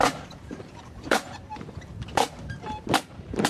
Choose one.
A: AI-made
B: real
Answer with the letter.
A